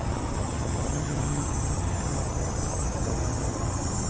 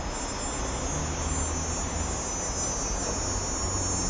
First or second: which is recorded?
second